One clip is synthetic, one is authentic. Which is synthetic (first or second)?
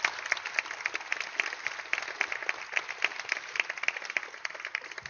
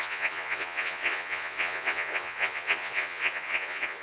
second